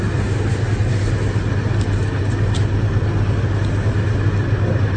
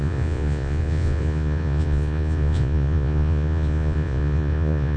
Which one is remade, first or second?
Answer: second